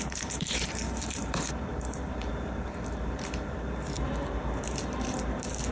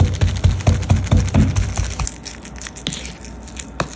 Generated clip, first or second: first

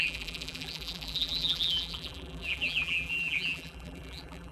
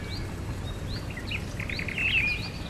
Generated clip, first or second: first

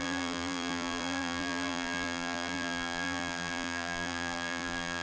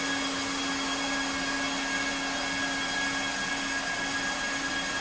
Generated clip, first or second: first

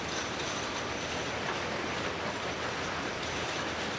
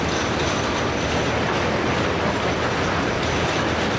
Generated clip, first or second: first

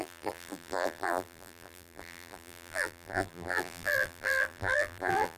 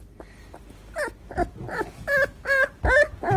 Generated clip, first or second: first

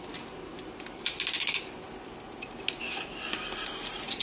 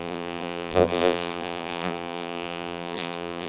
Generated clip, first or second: second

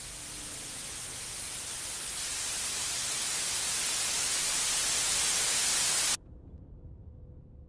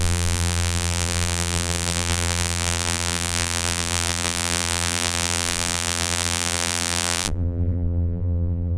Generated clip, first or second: second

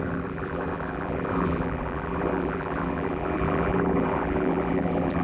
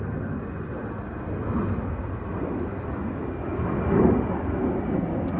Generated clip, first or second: first